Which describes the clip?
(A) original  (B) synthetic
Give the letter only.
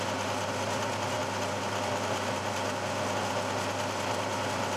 A